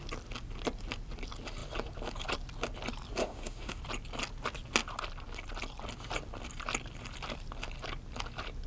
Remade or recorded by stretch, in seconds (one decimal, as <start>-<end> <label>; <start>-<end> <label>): 0.0-3.2 recorded; 3.2-3.8 remade; 3.8-8.7 recorded